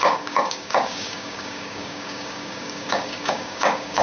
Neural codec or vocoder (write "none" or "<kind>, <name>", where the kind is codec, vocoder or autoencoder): codec, DAC